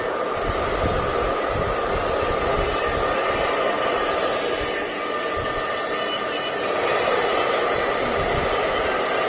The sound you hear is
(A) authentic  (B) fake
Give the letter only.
A